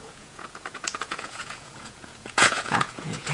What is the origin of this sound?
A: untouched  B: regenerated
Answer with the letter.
B